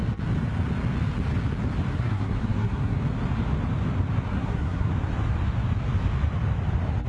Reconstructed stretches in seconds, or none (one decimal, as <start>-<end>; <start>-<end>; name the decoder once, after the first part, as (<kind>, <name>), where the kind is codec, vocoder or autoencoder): 1.9-3.0 (codec, SNAC); 4.3-4.9